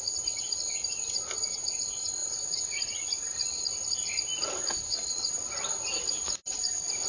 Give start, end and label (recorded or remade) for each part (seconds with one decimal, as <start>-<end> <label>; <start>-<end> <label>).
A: 0.0-7.1 recorded